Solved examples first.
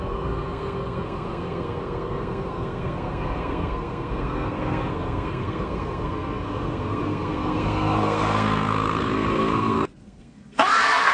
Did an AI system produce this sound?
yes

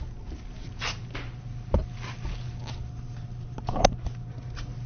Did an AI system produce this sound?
no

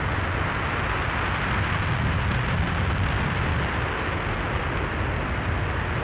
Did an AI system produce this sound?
no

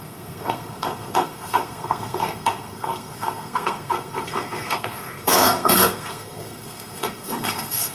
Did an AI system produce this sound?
yes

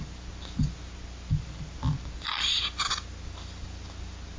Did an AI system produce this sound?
no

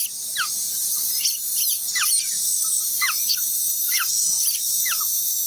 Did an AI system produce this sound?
no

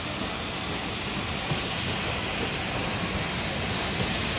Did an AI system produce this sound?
no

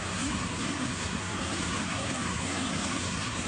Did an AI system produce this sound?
yes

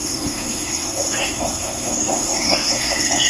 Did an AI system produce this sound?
yes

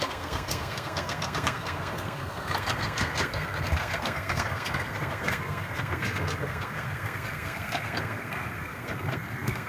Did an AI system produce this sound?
yes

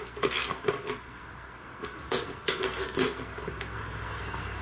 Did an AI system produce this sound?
yes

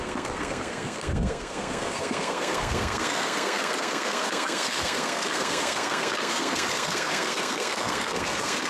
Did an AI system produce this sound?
yes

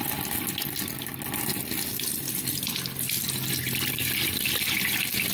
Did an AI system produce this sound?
no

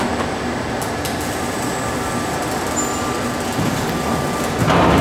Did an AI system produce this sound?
no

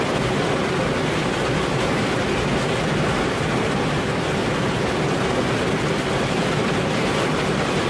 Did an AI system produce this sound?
no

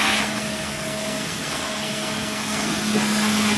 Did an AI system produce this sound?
yes